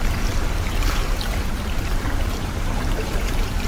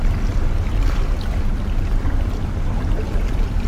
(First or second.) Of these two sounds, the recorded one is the second